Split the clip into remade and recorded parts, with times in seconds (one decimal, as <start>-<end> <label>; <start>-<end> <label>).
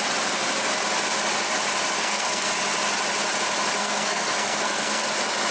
0.0-2.0 recorded; 2.0-2.5 remade; 2.5-3.8 recorded; 3.8-5.1 remade; 5.1-5.5 recorded